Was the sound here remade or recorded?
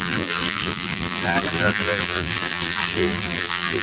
remade